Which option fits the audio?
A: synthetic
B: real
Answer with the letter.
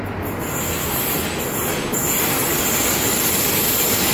B